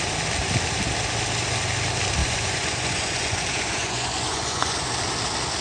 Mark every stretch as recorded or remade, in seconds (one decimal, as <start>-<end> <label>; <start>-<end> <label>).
0.0-2.2 recorded; 2.2-4.9 remade; 4.9-5.6 recorded